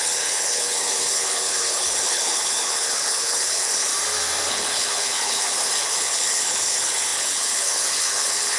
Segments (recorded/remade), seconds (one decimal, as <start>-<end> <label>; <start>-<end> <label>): 0.0-3.9 remade; 3.9-4.5 recorded; 4.5-8.6 remade